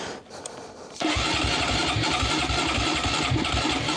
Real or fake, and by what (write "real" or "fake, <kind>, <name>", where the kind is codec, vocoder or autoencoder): fake, vocoder, BigVGAN v2